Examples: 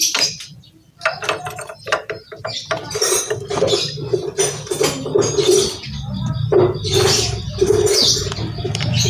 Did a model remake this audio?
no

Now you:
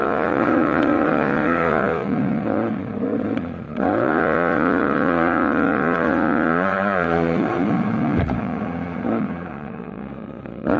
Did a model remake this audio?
yes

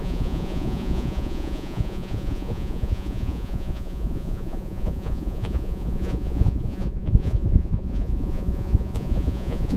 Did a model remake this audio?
yes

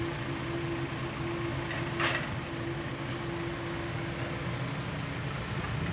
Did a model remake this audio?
no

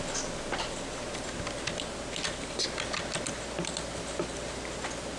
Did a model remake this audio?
no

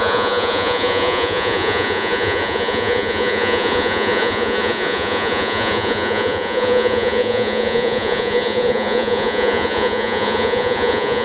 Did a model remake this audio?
yes